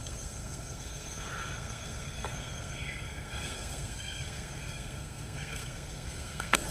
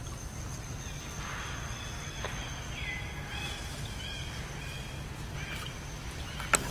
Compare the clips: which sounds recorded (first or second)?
second